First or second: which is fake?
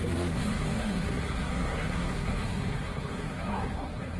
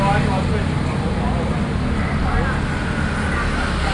first